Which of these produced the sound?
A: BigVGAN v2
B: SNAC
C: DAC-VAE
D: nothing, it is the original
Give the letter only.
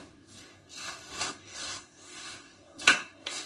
B